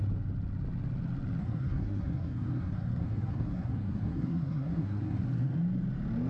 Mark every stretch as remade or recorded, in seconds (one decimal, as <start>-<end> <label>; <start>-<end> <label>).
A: 0.0-1.4 recorded; 1.4-5.2 remade; 5.2-6.3 recorded